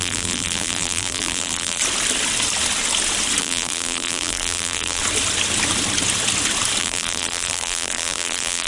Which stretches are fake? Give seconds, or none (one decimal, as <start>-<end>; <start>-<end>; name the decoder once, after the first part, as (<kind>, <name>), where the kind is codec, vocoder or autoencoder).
0.0-1.8 (vocoder, BigVGAN v2); 3.4-5.0; 6.8-8.7